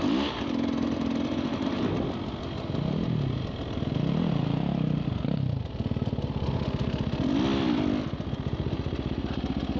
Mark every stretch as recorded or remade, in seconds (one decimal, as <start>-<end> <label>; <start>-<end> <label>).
0.0-7.5 recorded; 7.5-9.1 remade; 9.1-9.8 recorded